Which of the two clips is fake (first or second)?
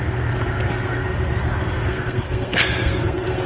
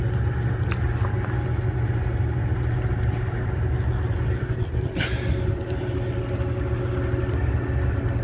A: first